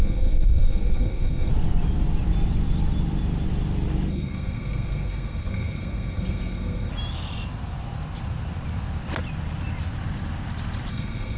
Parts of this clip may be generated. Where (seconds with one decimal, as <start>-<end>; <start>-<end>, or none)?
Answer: 0.0-1.5; 4.1-6.9; 10.9-11.4